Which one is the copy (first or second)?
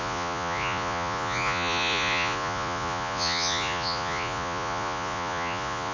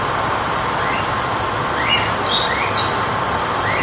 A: first